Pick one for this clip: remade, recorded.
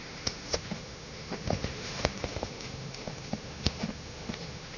remade